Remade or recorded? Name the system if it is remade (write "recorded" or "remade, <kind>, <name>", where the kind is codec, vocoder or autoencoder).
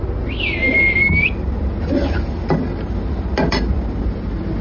recorded